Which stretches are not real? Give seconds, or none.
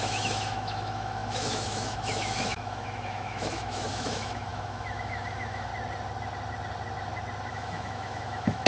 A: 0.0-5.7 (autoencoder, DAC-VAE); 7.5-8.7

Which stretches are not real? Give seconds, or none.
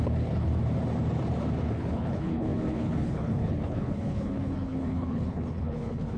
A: 0.0-0.5 (codec, HILCodec); 1.7-6.2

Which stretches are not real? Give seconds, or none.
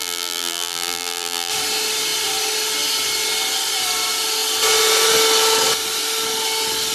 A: 0.0-1.5 (vocoder, BigVGAN v2)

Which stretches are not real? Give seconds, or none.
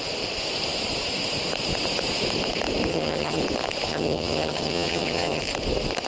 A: 2.9-3.4 (vocoder, HiFi-GAN); 3.9-5.4